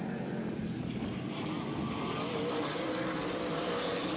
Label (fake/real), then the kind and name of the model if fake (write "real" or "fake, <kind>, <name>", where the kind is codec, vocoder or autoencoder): real